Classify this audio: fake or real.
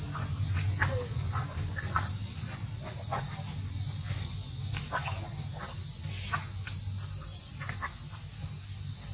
real